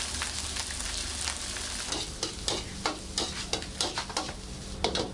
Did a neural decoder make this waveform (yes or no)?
no